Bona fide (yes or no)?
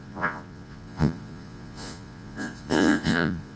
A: no